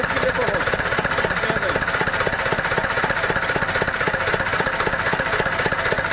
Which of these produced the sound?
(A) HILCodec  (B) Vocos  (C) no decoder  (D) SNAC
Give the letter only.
C